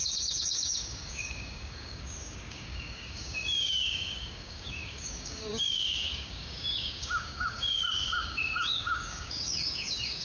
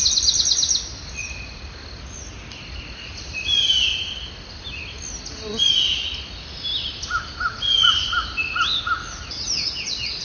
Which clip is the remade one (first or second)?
first